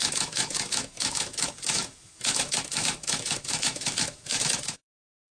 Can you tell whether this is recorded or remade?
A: remade